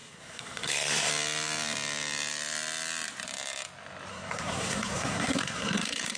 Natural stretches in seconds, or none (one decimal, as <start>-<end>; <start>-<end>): 1.1-4.1